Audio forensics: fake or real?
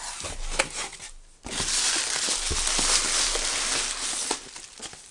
real